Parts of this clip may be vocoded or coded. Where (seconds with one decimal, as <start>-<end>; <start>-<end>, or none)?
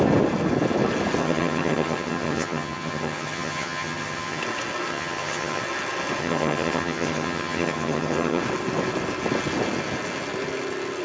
1.2-4.4; 4.9-5.6; 6.2-8.4